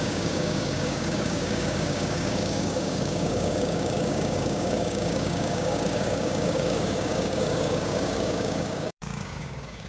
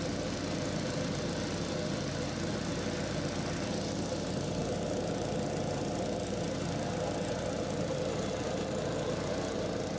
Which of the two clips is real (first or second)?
second